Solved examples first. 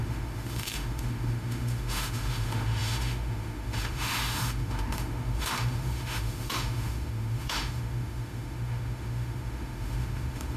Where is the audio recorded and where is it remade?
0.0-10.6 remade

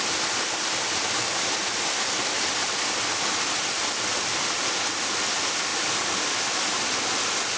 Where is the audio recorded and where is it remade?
0.0-7.6 recorded

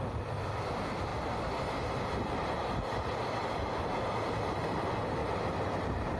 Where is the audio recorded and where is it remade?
0.0-5.2 recorded; 5.2-6.2 remade

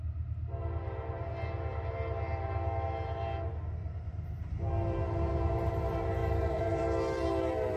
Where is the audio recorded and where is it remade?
0.0-6.2 recorded; 6.2-6.8 remade; 6.8-7.8 recorded

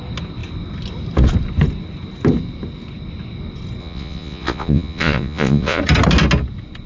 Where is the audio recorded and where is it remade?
0.0-3.8 recorded; 3.8-5.8 remade; 5.8-6.9 recorded

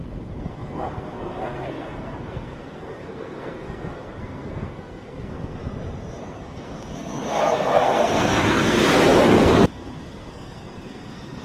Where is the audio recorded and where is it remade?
0.0-5.6 remade; 5.6-6.2 recorded; 6.2-11.4 remade